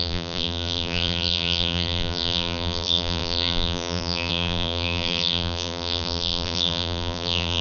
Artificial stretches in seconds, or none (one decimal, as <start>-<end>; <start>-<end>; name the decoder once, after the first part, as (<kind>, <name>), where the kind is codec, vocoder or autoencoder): 0.0-7.6 (vocoder, BigVGAN v2)